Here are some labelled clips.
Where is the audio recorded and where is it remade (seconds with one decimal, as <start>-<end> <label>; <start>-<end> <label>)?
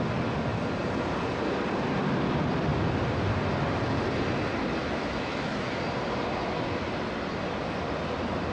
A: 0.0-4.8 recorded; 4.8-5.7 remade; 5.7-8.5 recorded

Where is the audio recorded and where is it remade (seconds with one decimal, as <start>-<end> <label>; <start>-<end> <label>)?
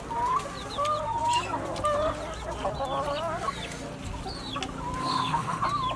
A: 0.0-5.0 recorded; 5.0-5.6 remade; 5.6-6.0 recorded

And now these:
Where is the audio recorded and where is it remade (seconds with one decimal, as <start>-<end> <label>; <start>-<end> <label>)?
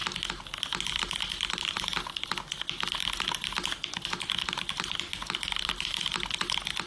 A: 0.0-6.9 recorded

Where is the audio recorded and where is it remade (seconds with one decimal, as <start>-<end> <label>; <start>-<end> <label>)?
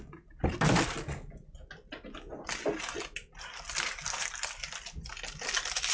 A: 0.0-5.9 recorded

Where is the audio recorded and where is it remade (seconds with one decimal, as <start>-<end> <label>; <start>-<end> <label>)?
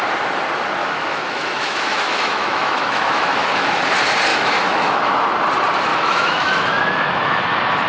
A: 0.0-0.8 recorded; 0.8-3.8 remade; 3.8-4.3 recorded; 4.3-5.0 remade; 5.0-5.9 recorded; 5.9-7.4 remade; 7.4-7.9 recorded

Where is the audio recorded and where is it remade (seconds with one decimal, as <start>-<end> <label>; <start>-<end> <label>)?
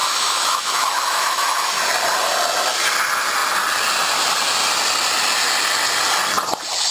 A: 0.0-1.7 remade; 1.7-6.9 recorded